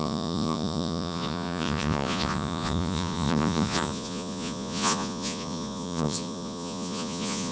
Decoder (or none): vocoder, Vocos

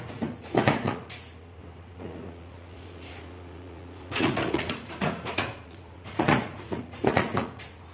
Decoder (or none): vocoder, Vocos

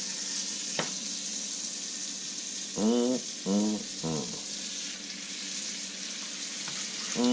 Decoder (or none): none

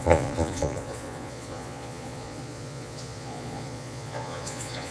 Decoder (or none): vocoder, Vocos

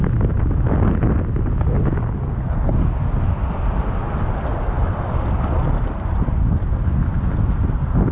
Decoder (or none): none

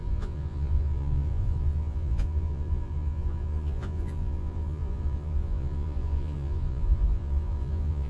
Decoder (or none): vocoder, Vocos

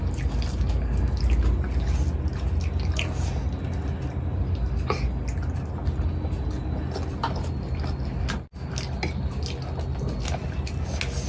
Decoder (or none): none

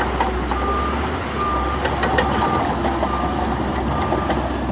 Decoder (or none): none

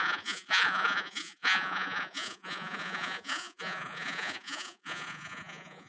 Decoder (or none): vocoder, Vocos